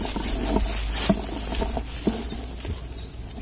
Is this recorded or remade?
recorded